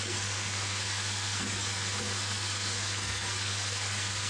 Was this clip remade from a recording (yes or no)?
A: yes